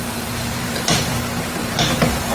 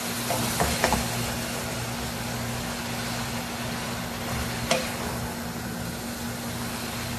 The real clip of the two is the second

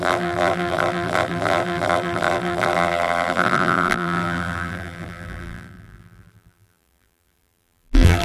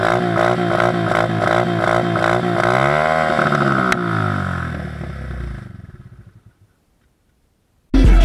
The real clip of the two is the second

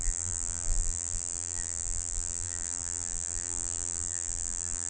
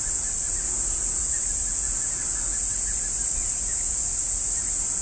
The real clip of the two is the second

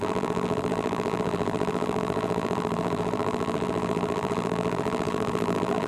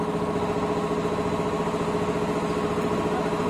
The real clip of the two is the second